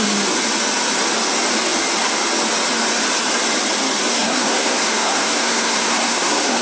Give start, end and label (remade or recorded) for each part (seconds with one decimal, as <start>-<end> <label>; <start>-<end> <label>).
0.0-4.1 recorded; 4.1-6.6 remade